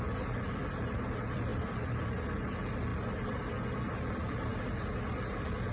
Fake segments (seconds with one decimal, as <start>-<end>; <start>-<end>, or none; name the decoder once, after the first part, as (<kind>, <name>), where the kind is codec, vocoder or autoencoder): none